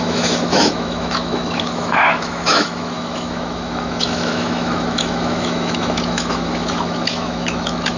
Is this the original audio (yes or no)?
no